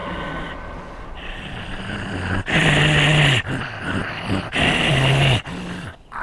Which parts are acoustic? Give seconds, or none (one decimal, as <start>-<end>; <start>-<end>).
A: 0.0-6.2